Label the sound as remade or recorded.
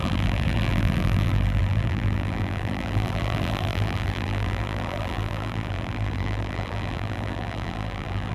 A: remade